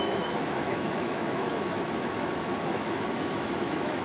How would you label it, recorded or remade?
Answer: remade